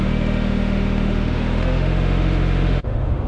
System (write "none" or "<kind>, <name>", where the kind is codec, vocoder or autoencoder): autoencoder, DAC-VAE